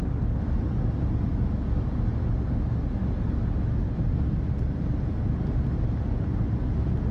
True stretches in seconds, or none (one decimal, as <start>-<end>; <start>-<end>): 0.0-7.1

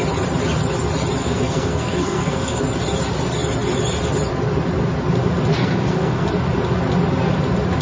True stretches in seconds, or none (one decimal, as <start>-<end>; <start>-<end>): 0.0-1.2; 2.6-5.5; 6.3-7.8

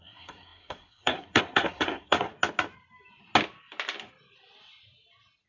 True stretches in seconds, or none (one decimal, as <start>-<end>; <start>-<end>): 2.3-5.5

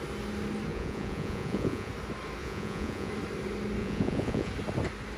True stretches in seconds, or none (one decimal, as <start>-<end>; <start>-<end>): 0.0-0.7; 1.9-2.4; 3.1-3.8; 4.5-5.2

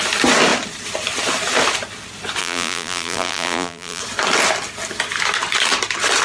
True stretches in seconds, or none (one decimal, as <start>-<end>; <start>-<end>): 0.0-2.4; 4.0-6.2

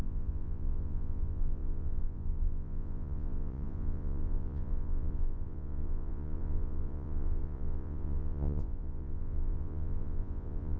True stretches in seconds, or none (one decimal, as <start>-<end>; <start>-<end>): none